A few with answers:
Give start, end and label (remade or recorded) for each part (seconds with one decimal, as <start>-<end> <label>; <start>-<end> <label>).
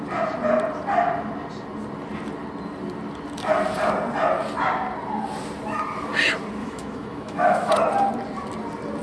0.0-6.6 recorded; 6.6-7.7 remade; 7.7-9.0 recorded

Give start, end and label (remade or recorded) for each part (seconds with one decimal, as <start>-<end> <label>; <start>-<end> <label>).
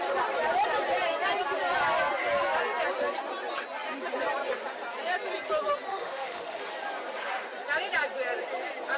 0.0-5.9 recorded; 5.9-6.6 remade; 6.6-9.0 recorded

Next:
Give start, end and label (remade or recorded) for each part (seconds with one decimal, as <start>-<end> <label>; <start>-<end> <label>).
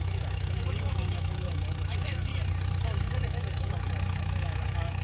0.0-2.3 remade; 2.3-3.1 recorded; 3.1-5.0 remade